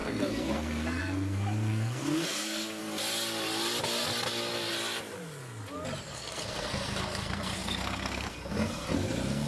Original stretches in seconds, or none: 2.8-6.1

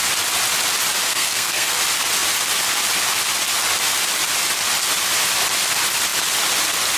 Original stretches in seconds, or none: 0.0-1.1; 1.8-7.0

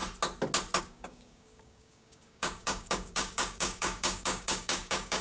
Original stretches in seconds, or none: 0.0-0.8

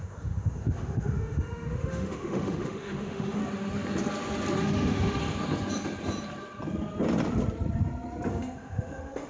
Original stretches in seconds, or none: 3.4-4.6; 5.2-8.3

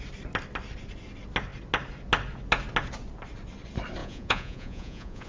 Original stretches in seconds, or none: 0.0-4.0